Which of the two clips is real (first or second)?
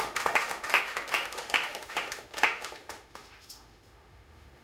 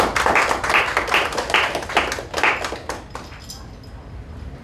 second